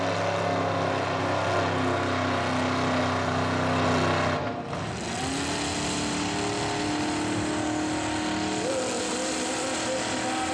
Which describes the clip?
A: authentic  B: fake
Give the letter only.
A